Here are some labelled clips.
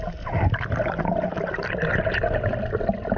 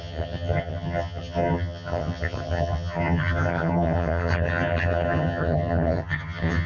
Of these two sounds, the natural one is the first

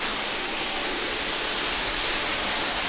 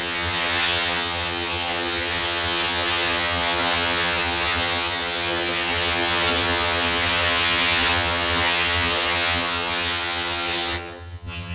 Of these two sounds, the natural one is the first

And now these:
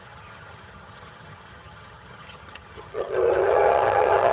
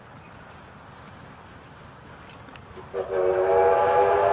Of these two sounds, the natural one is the second